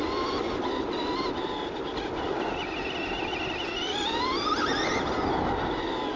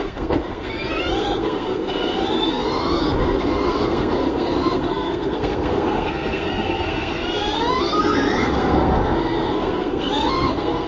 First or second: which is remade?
second